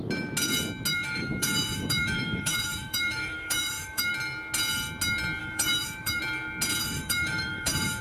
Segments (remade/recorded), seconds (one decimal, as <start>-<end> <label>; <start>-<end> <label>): 0.0-0.9 recorded; 0.9-4.1 remade; 4.1-5.4 recorded; 5.4-6.2 remade; 6.2-6.8 recorded; 6.8-8.0 remade